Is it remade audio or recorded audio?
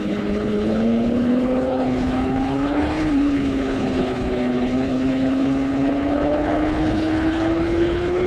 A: remade